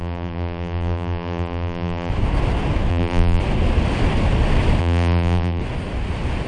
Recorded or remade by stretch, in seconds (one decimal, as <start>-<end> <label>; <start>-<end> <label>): 0.0-2.1 remade; 2.1-2.9 recorded; 2.9-3.4 remade; 3.4-4.8 recorded; 4.8-5.6 remade; 5.6-6.5 recorded